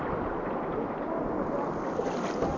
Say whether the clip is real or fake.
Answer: real